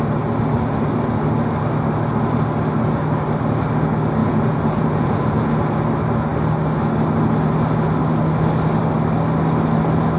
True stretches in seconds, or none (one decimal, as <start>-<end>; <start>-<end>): 0.0-4.2; 5.5-10.2